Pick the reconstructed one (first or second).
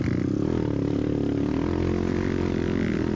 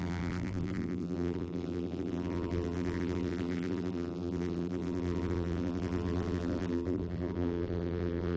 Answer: second